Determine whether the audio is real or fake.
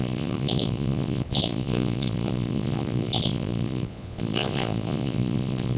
fake